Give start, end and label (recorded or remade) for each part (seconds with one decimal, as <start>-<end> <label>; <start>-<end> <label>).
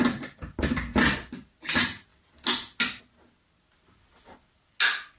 0.0-5.2 recorded